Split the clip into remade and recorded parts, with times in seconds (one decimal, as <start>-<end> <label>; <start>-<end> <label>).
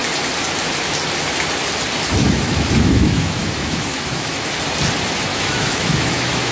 0.0-2.2 recorded; 2.2-4.5 remade; 4.5-5.3 recorded; 5.3-6.5 remade